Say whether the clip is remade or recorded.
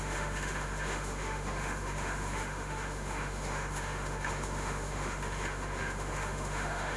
remade